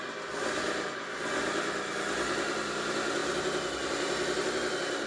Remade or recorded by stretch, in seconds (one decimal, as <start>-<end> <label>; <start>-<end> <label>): 0.0-5.1 recorded